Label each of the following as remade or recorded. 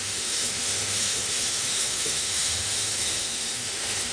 remade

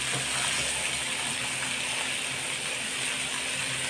recorded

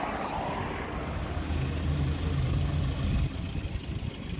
recorded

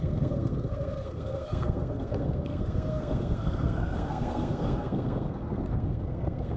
remade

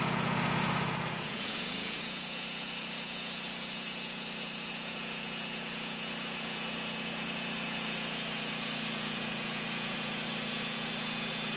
remade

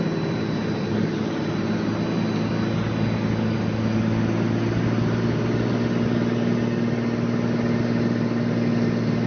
recorded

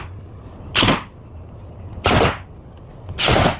recorded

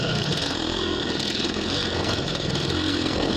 remade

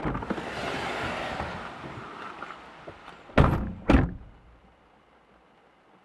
recorded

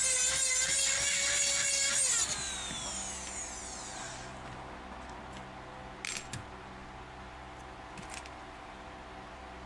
recorded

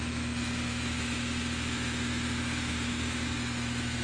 remade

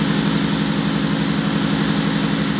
recorded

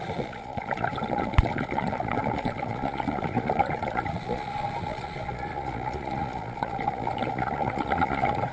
remade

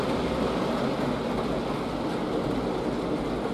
recorded